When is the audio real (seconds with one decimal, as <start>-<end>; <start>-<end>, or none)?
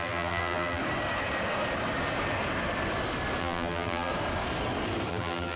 0.8-3.4; 4.1-5.1